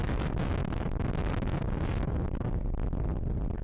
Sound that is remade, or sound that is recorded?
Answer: recorded